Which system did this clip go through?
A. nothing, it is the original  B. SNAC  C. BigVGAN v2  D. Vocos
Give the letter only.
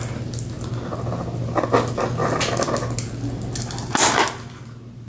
A